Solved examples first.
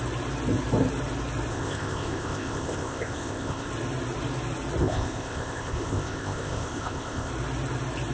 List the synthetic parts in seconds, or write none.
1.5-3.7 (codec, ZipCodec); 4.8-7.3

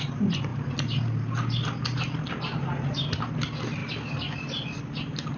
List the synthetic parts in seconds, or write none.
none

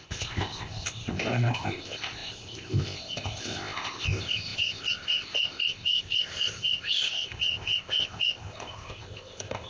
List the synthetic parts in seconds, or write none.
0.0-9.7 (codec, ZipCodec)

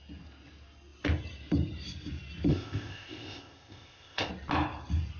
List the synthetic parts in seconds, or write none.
2.5-4.3 (codec, ZipCodec)